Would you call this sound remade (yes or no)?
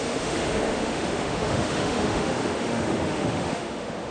yes